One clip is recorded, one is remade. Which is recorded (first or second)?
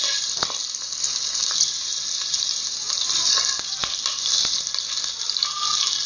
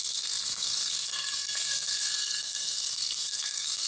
first